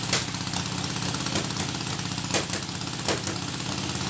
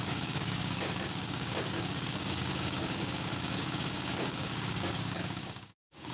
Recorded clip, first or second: first